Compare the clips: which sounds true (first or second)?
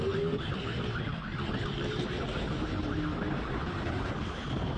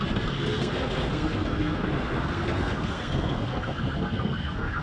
first